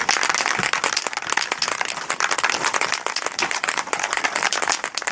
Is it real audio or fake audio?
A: real